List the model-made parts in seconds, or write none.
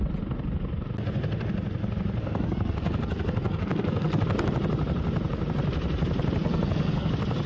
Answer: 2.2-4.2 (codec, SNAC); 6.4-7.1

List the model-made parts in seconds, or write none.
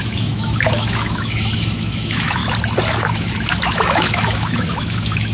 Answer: 0.0-2.4 (autoencoder, DAC-VAE); 3.0-5.3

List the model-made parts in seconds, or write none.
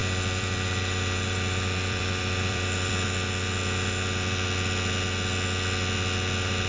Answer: 0.0-2.9 (vocoder, BigVGAN v2)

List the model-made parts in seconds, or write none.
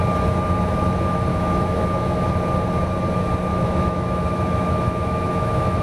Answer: 1.3-2.3 (autoencoder, DAC-VAE); 3.5-5.8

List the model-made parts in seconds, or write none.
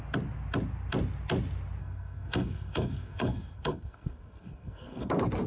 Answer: 1.8-5.1 (codec, SNAC)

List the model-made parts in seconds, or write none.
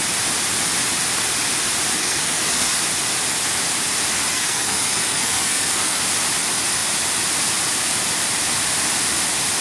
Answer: 2.0-2.8 (codec, SNAC); 4.3-6.0